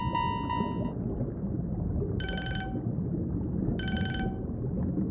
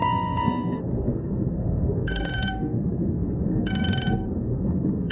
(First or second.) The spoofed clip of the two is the second